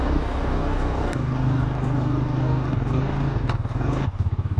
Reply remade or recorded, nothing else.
remade